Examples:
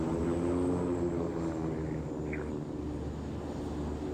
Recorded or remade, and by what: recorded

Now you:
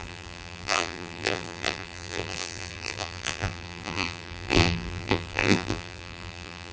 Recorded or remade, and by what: remade, vocoder, BigVGAN v2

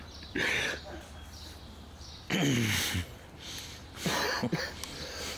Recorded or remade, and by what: recorded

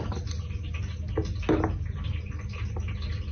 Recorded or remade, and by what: recorded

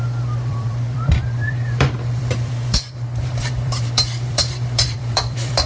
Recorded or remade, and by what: remade, vocoder, BigVGAN v2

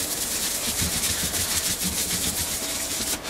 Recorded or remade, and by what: remade, vocoder, BigVGAN v2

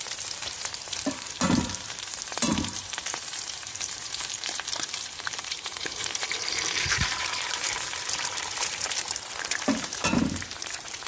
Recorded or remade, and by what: remade, vocoder, BigVGAN v2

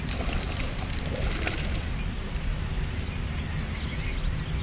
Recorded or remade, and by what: recorded